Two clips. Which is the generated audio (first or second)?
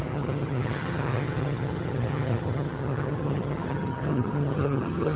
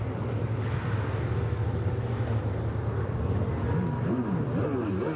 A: first